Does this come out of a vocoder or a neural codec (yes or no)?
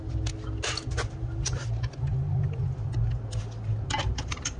no